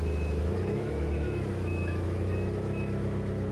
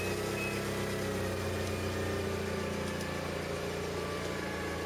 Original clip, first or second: second